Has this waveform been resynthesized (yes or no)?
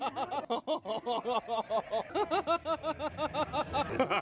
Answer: no